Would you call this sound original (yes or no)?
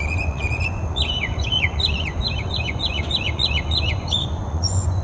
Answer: no